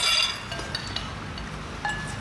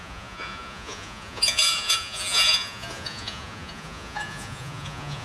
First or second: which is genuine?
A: first